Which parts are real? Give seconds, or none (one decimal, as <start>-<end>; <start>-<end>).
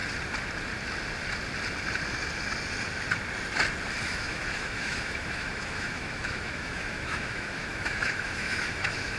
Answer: 0.0-4.0